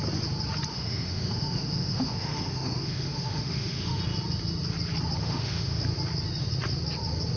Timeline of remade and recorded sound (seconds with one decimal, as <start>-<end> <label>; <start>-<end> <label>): 0.0-0.7 recorded; 0.7-4.0 remade; 4.0-5.2 recorded; 5.2-5.8 remade; 5.8-7.4 recorded